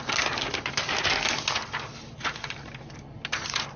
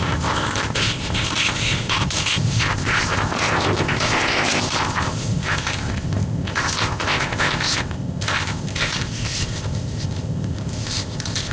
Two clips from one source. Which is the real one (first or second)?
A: first